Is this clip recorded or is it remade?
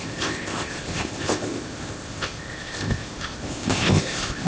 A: remade